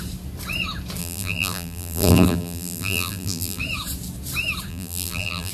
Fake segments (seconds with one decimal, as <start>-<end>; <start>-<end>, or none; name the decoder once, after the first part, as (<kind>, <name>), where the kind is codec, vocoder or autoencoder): 1.0-3.6 (vocoder, BigVGAN v2); 4.7-5.5